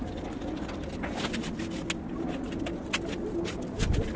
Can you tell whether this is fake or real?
real